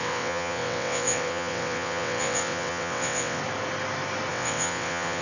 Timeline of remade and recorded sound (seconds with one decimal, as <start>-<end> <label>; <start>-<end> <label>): 0.0-3.4 remade; 3.4-4.3 recorded; 4.3-5.2 remade